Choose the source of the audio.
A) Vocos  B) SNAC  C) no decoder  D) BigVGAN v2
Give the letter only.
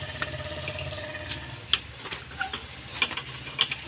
C